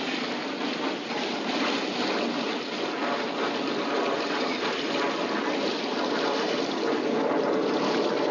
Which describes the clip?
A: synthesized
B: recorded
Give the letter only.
B